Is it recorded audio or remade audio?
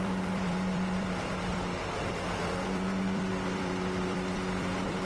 remade